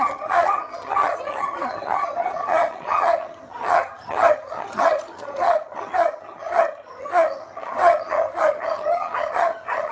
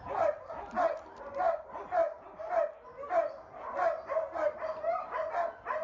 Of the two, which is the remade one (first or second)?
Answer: first